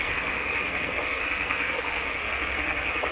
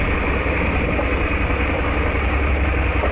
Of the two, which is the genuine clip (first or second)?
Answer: second